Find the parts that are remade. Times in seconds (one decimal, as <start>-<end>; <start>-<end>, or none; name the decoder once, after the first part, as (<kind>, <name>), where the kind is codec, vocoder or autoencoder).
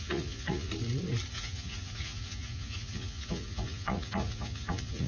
0.0-0.7 (vocoder, Vocos); 1.3-5.1